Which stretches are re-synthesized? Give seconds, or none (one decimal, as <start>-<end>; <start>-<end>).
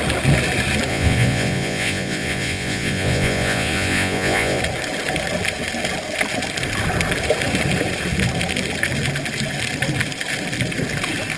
0.9-4.6